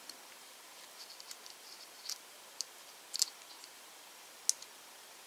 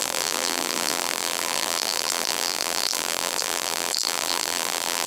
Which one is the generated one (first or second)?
second